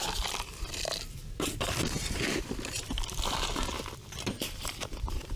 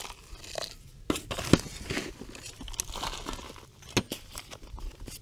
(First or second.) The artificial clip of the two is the first